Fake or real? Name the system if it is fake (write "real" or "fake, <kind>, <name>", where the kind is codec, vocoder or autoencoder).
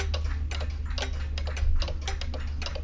real